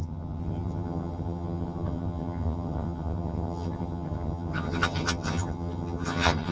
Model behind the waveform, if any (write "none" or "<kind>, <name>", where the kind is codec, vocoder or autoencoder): vocoder, HiFi-GAN